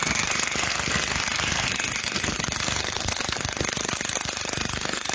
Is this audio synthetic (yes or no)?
yes